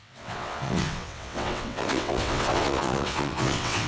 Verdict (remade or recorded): remade